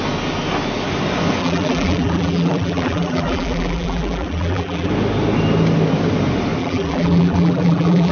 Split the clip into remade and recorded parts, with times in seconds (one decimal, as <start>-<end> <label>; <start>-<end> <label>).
0.0-1.4 recorded; 1.4-4.9 remade; 4.9-6.6 recorded; 6.6-8.1 remade